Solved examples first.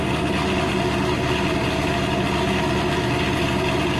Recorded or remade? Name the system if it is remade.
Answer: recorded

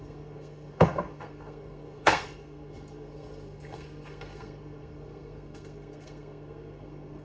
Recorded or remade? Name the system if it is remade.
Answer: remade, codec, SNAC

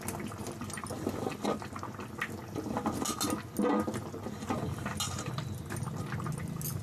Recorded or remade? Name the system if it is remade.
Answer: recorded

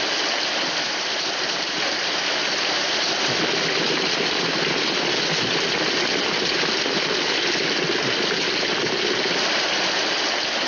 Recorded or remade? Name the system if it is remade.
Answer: recorded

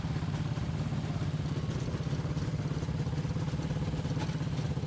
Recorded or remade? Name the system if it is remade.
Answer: recorded